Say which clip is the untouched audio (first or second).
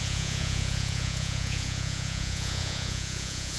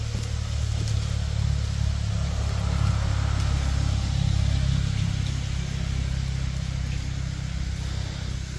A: second